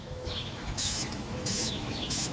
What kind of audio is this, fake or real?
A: fake